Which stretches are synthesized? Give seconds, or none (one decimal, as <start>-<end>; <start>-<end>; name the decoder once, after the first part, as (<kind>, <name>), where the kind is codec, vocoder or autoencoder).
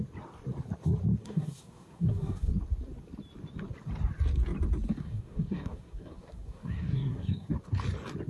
1.2-2.5 (codec, SNAC); 5.0-7.5